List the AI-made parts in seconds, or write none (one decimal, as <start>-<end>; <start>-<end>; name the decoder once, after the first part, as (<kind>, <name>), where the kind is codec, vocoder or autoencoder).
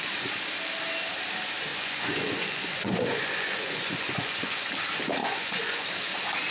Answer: 1.7-4.7 (vocoder, Vocos); 5.2-5.9